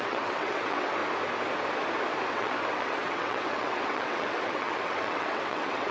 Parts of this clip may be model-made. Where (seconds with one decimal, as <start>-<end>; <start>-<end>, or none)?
0.0-1.0; 2.3-5.9